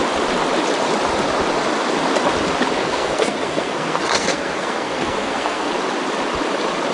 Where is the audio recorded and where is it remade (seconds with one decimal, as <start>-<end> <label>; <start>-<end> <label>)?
0.0-2.8 recorded; 2.8-5.7 remade; 5.7-6.9 recorded